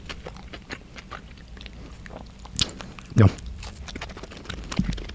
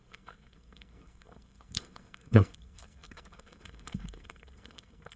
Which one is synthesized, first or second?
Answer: second